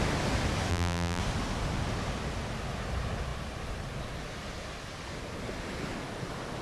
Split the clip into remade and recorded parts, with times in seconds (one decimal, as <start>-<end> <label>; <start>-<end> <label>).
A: 0.0-0.7 recorded; 0.7-1.2 remade; 1.2-6.6 recorded